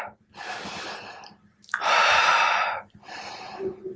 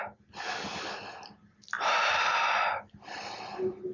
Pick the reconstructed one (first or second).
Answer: first